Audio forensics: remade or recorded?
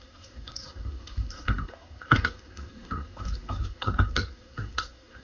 remade